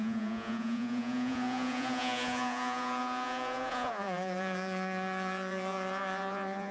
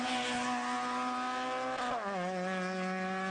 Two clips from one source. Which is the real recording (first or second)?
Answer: second